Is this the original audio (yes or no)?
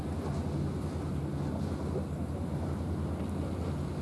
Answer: yes